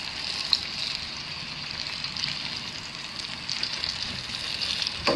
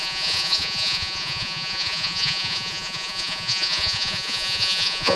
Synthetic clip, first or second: second